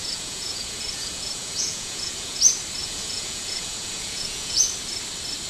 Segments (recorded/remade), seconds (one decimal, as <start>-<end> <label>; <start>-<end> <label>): 0.0-2.4 remade; 2.4-2.8 recorded; 2.8-4.6 remade; 4.6-5.5 recorded